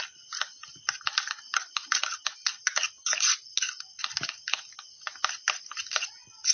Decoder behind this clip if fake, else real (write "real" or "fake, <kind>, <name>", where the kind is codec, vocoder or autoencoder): real